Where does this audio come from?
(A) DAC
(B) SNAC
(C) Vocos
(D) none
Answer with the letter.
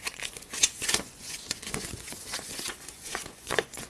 C